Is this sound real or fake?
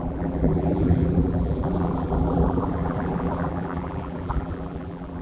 fake